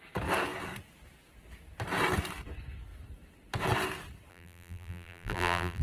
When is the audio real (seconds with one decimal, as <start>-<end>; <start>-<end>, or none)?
0.0-4.3